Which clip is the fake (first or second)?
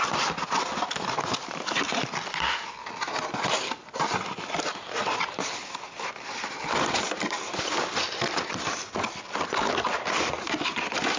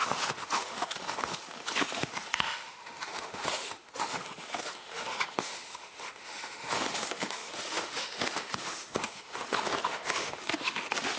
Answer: second